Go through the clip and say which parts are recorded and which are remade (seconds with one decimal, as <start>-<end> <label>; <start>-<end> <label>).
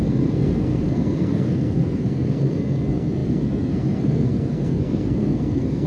0.0-5.9 remade